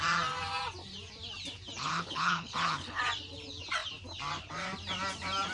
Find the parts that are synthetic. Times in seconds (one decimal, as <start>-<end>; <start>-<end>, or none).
1.8-3.0